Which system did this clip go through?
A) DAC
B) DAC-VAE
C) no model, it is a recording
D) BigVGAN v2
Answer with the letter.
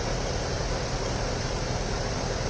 D